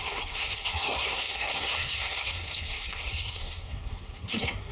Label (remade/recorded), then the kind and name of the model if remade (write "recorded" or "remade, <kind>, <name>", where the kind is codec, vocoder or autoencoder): remade, codec, SNAC